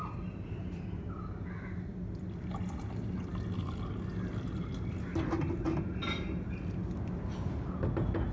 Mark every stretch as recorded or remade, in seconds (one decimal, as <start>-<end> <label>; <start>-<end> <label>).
0.0-8.3 recorded